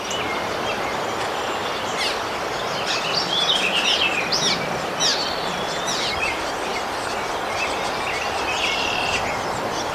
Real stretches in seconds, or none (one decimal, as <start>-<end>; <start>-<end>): 0.0-1.6; 2.2-5.1; 6.1-9.9